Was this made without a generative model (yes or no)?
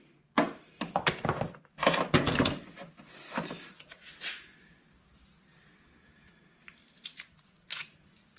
yes